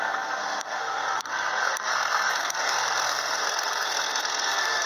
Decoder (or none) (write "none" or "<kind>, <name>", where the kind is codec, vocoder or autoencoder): codec, SNAC